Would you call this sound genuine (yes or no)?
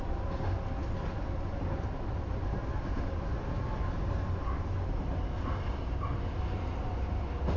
yes